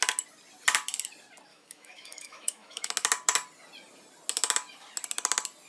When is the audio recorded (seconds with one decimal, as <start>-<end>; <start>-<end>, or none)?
0.0-1.5; 2.9-5.7